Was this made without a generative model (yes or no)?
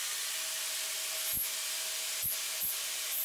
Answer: yes